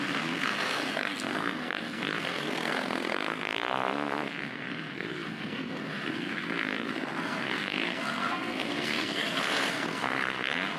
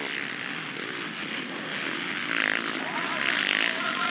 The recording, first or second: second